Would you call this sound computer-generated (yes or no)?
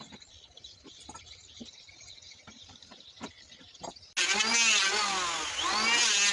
no